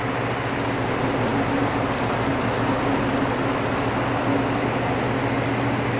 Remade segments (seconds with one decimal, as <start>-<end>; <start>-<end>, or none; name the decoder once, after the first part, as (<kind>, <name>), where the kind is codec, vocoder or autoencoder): none